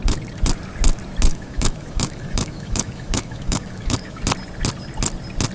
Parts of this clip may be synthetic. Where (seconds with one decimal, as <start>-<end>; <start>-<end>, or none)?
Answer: 1.3-4.2